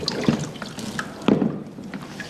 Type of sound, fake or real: real